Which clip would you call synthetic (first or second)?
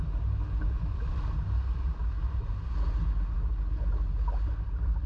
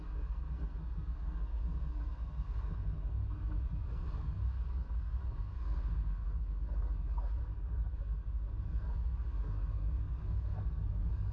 second